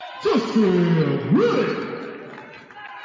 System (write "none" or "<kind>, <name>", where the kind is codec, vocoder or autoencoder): none